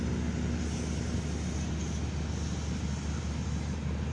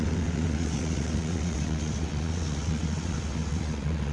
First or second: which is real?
first